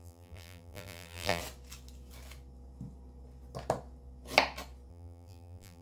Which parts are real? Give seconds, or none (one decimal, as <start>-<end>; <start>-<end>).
1.4-4.9